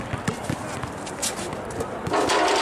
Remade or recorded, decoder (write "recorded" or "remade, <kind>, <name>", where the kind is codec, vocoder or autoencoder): recorded